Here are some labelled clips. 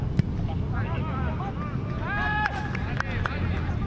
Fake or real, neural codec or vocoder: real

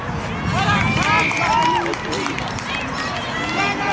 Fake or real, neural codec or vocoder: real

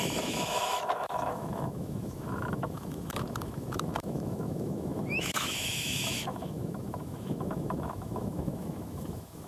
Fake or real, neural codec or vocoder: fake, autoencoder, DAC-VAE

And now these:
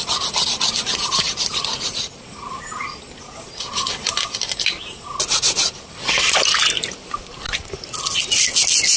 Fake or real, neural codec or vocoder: real